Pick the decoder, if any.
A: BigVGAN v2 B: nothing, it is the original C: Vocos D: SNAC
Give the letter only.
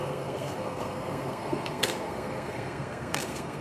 D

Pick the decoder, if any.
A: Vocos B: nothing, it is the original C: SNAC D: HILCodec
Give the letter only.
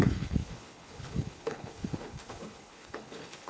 D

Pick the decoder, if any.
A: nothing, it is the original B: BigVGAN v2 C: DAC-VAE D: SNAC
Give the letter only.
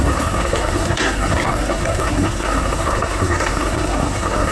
D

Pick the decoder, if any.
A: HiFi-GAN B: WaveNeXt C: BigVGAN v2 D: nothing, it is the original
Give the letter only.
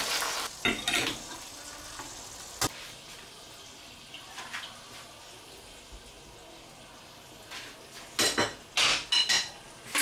D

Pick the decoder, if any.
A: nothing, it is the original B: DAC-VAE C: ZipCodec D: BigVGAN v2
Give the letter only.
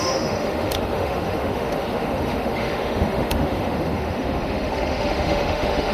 B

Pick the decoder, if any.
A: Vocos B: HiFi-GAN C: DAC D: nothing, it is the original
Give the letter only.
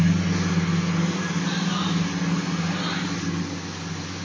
D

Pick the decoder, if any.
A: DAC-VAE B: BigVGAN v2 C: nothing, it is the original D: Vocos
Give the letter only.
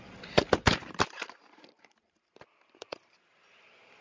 B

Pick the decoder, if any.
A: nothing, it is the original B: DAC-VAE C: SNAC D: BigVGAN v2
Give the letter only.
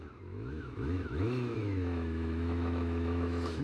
B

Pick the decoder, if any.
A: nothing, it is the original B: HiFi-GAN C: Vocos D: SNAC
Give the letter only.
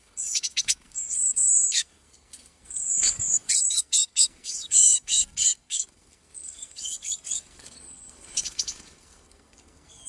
D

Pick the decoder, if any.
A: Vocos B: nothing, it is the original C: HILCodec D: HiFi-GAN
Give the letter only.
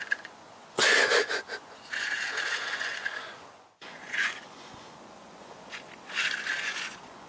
A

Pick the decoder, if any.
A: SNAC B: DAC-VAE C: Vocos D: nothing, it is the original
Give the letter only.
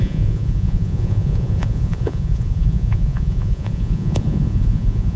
C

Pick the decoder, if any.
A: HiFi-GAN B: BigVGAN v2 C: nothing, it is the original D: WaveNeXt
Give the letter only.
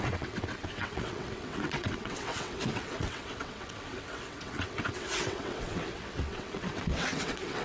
D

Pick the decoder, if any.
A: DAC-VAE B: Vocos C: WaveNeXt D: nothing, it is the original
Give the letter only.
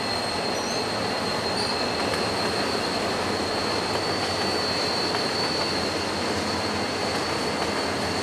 D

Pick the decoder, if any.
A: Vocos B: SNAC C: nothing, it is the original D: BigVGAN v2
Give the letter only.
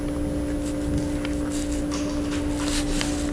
C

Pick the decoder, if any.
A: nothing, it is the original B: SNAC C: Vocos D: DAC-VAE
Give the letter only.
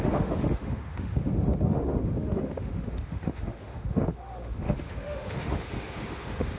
D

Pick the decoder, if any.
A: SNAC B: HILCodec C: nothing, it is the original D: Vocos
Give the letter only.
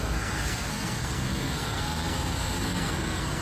A